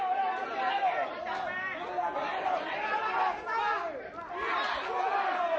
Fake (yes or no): no